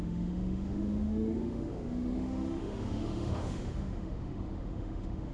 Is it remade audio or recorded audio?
remade